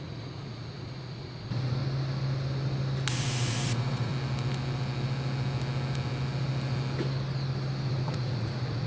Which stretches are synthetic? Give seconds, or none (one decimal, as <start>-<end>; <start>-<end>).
0.0-1.8; 3.1-4.1; 7.9-8.9